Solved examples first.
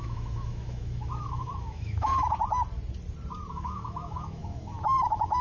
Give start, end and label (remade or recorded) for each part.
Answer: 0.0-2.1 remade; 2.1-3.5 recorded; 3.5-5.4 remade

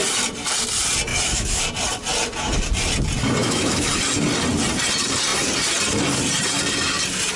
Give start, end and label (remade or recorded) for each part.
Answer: 0.0-1.1 recorded; 1.1-1.6 remade; 1.6-3.4 recorded; 3.4-3.9 remade; 3.9-7.4 recorded

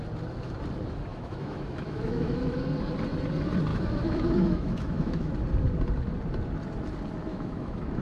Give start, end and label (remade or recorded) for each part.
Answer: 0.0-1.1 recorded; 1.1-2.6 remade; 2.6-3.7 recorded; 3.7-5.3 remade; 5.3-7.3 recorded; 7.3-8.0 remade

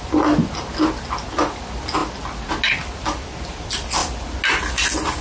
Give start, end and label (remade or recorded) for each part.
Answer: 0.0-5.2 recorded